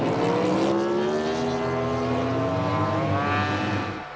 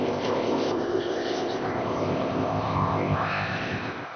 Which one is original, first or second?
first